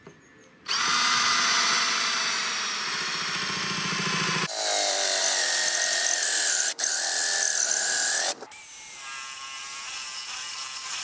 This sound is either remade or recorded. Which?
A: recorded